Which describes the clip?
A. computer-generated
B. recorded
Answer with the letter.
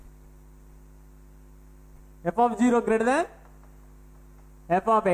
B